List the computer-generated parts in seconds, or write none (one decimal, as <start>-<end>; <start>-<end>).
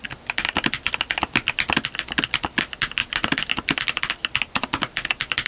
none